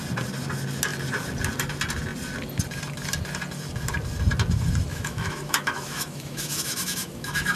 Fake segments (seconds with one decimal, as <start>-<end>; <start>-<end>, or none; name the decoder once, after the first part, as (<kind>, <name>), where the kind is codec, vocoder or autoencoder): 4.9-7.6 (autoencoder, DAC-VAE)